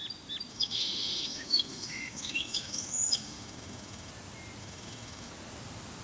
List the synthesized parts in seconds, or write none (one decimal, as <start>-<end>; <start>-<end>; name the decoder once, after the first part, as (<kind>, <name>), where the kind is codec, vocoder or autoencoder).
0.5-4.1 (autoencoder, DAC-VAE); 4.6-5.3